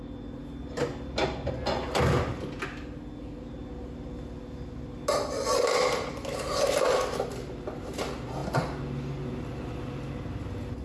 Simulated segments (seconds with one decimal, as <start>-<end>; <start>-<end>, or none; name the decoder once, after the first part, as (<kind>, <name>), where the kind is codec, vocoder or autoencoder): none